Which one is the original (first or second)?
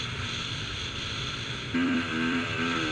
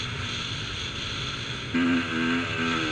second